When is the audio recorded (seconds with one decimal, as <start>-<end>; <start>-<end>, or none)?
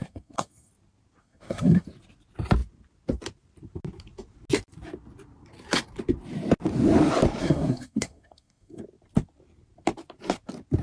0.7-1.2; 1.9-7.4; 8.8-10.8